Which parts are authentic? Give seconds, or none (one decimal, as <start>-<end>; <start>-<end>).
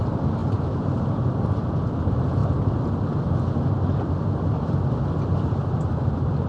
0.0-0.4; 1.2-6.5